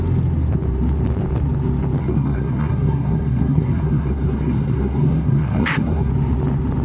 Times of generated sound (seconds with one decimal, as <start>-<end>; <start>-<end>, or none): 2.0-6.1